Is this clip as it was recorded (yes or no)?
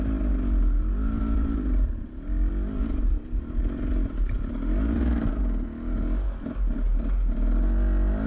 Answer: yes